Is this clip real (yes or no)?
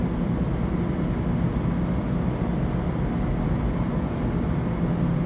yes